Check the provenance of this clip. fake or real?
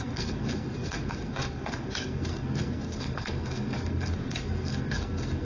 fake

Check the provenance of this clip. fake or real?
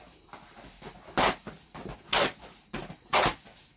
real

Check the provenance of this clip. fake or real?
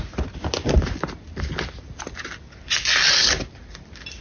real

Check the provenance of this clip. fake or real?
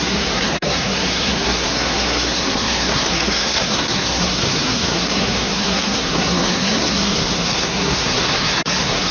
fake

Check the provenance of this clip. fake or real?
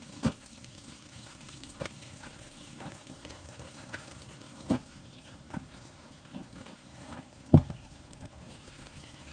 fake